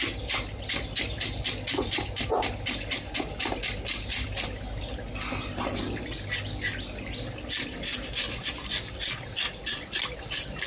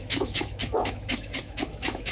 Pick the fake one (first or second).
second